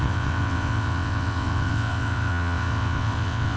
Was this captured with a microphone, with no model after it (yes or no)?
no